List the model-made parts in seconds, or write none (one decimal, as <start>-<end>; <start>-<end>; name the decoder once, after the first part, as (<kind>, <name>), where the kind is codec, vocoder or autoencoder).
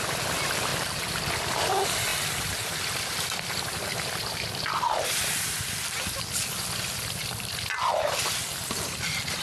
0.0-9.4 (vocoder, BigVGAN v2)